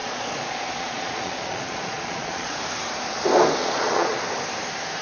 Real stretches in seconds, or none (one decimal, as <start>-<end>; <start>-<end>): 2.6-3.6; 4.2-5.0